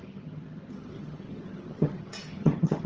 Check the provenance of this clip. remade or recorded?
remade